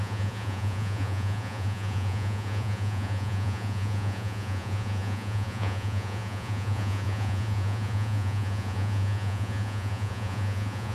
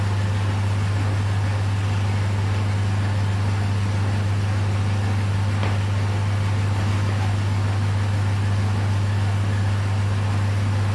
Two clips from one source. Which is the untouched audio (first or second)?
second